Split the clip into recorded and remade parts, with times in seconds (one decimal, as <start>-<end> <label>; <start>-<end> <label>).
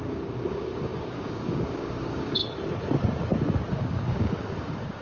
0.0-2.4 remade; 2.4-3.7 recorded; 3.7-5.0 remade